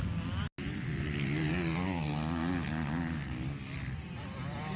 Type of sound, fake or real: real